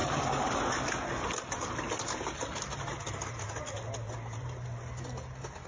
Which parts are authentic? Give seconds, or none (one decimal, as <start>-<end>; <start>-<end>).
0.0-5.7